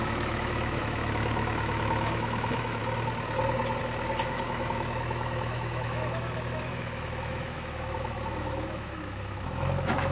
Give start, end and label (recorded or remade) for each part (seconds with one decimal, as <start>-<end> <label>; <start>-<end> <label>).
0.0-2.8 remade; 2.8-3.8 recorded; 3.8-10.1 remade